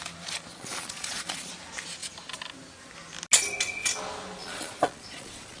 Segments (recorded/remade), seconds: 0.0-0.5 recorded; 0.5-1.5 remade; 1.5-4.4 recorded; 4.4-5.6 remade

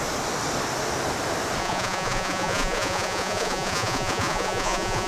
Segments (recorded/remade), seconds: 0.0-1.6 recorded; 1.6-5.1 remade

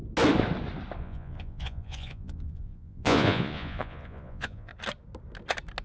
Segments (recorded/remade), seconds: 0.0-1.0 recorded; 1.0-4.7 remade; 4.7-5.8 recorded

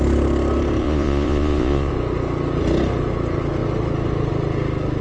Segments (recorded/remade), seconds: 0.0-0.8 recorded; 0.8-1.9 remade; 1.9-5.0 recorded